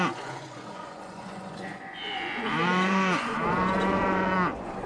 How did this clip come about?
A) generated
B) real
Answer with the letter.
A